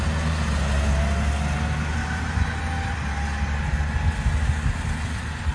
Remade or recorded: recorded